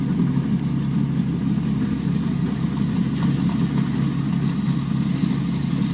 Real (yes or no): yes